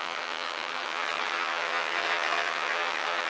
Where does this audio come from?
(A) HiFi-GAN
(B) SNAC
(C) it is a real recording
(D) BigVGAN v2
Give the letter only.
A